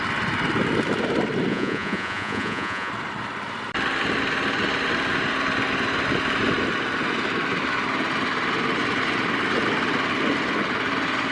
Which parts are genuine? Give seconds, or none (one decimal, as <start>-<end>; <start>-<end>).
0.0-1.5; 2.9-11.3